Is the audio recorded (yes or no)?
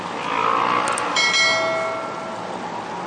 yes